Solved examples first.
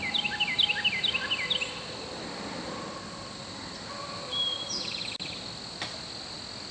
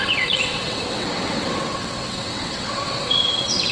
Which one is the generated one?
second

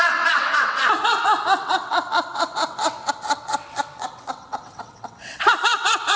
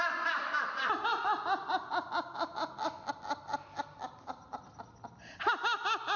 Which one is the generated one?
first